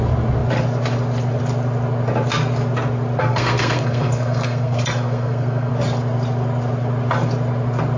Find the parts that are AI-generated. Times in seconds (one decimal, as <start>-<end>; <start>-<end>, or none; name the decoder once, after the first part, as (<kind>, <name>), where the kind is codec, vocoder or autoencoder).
3.2-5.7 (codec, SNAC)